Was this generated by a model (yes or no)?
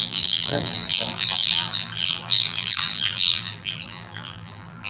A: yes